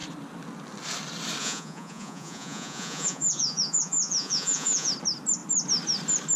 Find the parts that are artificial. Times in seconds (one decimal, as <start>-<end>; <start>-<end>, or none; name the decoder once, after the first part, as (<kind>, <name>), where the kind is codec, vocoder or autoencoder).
1.4-4.9 (vocoder, Vocos)